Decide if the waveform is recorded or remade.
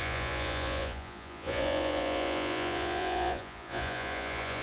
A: remade